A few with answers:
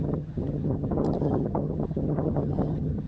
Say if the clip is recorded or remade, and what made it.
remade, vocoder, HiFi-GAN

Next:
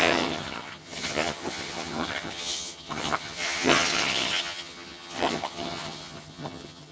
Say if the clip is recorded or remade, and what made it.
remade, vocoder, HiFi-GAN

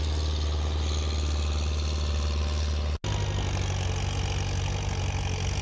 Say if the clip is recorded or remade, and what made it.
recorded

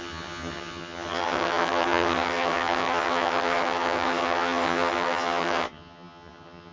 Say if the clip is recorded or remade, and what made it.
remade, vocoder, HiFi-GAN